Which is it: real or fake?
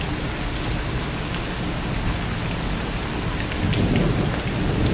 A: real